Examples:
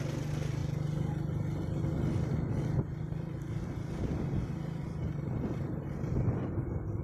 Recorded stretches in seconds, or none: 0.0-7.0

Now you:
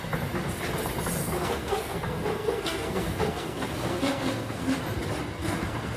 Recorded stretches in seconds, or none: 0.0-1.2; 4.8-5.4

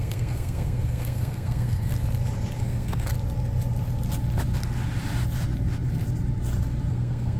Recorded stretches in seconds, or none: 1.9-2.6; 3.1-6.9

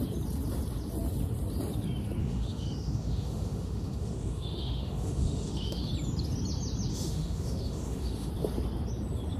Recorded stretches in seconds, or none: 0.0-2.2; 5.9-6.9; 8.3-9.4

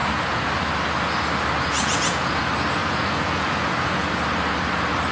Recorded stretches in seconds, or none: 0.5-1.6; 2.4-2.8; 4.1-5.1

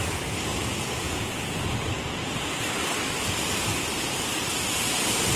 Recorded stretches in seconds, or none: 0.0-0.5; 2.3-5.4

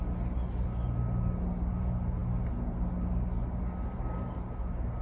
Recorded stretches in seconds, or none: 0.0-5.0